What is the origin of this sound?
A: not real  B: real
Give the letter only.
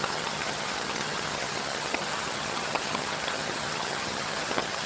A